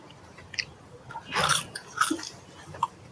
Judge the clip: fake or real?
fake